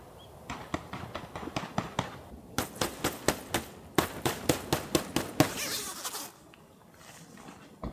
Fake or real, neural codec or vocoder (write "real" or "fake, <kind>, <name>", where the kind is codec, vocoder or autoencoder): real